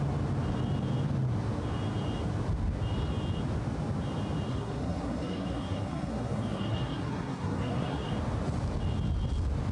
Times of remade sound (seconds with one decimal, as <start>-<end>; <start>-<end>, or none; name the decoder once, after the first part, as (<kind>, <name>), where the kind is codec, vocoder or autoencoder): 4.5-8.1 (codec, SNAC)